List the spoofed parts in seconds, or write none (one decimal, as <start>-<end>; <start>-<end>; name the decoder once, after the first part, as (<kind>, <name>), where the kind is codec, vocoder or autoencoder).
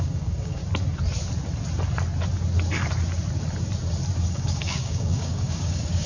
0.0-0.6 (codec, DAC); 4.3-6.1